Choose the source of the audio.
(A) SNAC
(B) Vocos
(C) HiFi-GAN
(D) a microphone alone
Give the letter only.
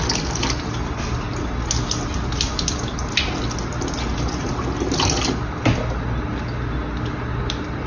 D